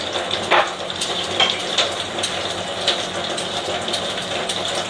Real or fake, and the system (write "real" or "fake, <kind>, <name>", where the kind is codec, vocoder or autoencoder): real